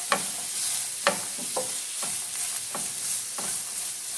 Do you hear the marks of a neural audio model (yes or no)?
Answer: no